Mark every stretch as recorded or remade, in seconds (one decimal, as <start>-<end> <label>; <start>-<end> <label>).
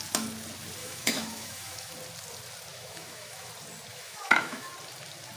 0.0-0.8 recorded; 0.8-1.9 remade; 1.9-2.7 recorded; 2.7-3.5 remade; 3.5-3.9 recorded; 3.9-4.7 remade; 4.7-5.4 recorded